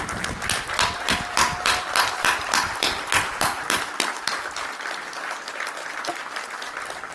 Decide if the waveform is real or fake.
fake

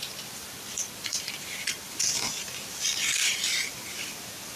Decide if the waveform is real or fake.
fake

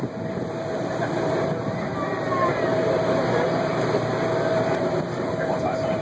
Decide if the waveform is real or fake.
fake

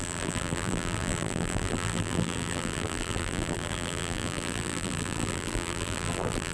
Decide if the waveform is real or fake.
fake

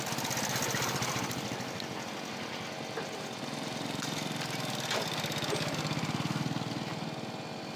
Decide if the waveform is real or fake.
real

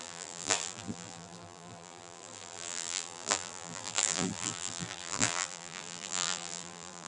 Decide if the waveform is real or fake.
fake